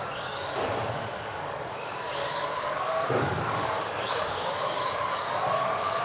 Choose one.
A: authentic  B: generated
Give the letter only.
B